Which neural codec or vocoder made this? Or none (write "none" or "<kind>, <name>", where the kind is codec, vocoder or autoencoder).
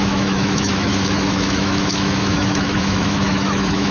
autoencoder, DAC-VAE